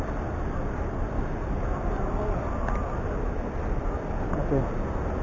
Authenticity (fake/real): real